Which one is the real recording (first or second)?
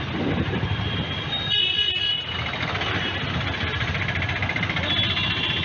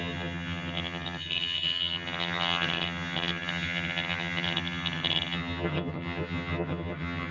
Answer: first